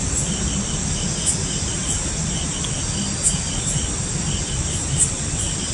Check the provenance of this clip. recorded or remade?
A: recorded